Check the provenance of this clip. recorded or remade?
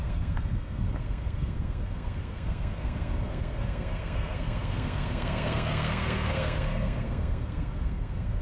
remade